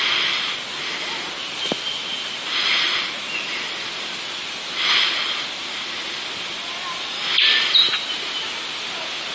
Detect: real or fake real